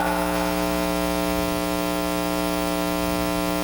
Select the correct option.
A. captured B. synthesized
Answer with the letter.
A